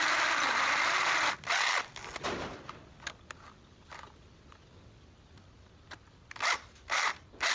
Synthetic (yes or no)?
no